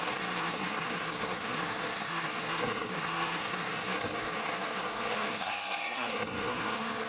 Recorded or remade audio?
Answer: remade